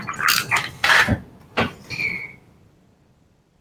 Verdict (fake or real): fake